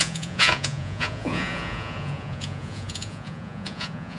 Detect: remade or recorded remade